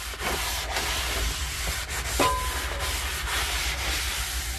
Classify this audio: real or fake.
real